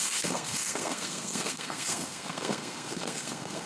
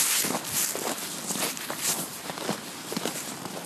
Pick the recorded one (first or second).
second